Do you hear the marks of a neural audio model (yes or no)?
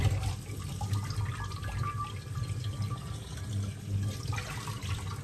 no